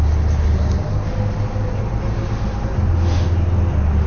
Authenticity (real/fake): real